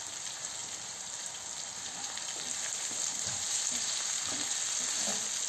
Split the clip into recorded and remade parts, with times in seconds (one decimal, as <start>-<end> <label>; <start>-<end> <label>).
0.0-0.6 recorded; 0.6-1.3 remade; 1.3-3.1 recorded; 3.1-4.1 remade; 4.1-5.5 recorded